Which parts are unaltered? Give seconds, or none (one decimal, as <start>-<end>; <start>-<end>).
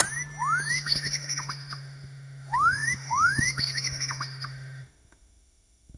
0.0-0.7